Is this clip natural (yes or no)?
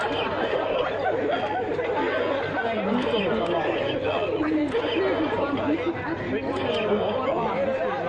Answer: yes